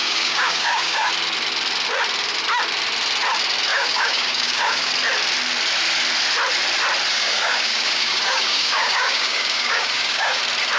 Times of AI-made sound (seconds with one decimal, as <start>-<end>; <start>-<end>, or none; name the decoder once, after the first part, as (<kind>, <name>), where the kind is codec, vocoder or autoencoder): 0.0-1.1 (codec, DAC); 3.7-4.9; 7.1-10.4

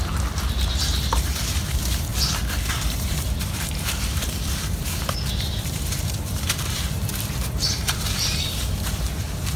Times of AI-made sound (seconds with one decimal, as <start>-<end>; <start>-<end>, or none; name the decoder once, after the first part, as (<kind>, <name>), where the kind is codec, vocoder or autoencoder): 0.0-2.1 (vocoder, BigVGAN v2); 2.7-9.6

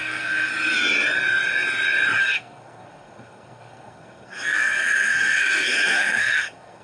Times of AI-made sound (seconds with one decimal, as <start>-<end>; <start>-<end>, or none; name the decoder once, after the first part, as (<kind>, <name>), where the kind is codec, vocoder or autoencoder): 0.0-0.5 (codec, SNAC); 2.2-6.8

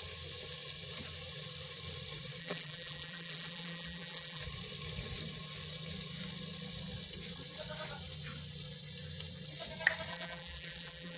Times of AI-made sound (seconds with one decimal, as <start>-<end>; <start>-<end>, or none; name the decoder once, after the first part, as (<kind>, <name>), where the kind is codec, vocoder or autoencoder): 2.4-4.4 (vocoder, BigVGAN v2); 10.1-11.2

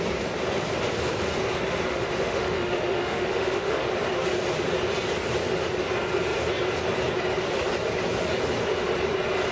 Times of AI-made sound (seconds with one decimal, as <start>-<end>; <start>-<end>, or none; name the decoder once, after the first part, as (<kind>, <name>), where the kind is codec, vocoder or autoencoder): 1.9-3.9 (autoencoder, DAC-VAE)

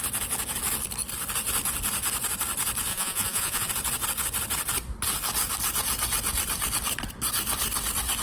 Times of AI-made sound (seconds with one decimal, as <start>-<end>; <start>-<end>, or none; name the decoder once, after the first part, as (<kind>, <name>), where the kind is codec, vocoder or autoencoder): 2.9-3.7 (vocoder, Vocos)

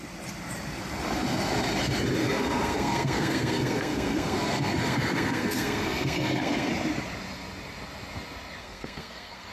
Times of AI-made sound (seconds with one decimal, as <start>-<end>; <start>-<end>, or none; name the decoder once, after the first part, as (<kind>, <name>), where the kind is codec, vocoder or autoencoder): 2.2-6.7 (codec, SNAC); 8.6-9.5